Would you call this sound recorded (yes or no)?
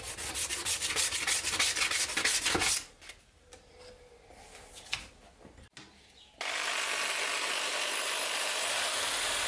yes